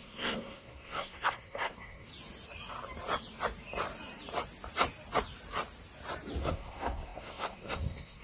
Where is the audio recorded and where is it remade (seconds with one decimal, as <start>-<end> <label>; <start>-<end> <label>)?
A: 0.0-2.1 remade; 2.1-6.4 recorded; 6.4-8.2 remade